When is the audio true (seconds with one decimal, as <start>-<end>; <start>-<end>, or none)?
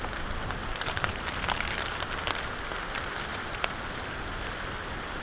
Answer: 0.0-0.6; 2.1-3.3; 4.0-5.2